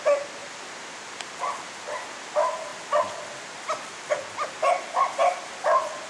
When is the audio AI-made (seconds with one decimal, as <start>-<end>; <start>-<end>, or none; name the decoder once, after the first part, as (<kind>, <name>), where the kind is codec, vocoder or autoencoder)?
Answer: none